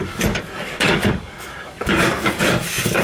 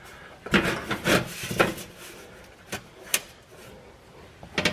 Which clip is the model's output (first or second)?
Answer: first